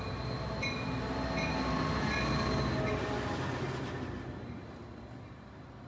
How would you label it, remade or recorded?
recorded